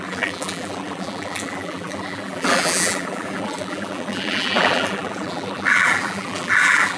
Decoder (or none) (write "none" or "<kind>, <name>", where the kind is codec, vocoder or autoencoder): vocoder, BigVGAN v2